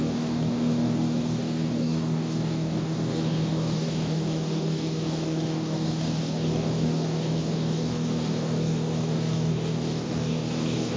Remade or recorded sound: remade